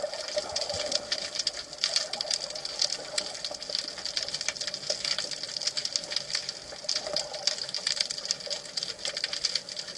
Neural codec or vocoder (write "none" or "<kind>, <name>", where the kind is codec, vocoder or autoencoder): none